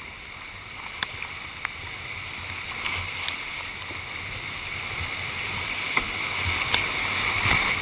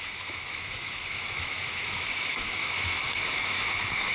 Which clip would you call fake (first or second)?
second